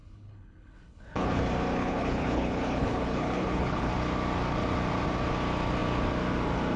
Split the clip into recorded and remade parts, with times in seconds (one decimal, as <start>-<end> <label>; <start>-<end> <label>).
0.0-1.4 remade; 1.4-1.8 recorded; 1.8-3.9 remade; 3.9-6.8 recorded